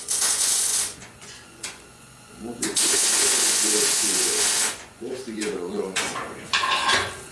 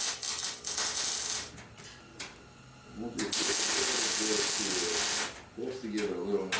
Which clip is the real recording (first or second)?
second